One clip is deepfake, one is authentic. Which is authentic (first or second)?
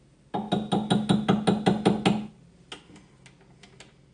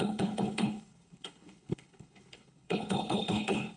first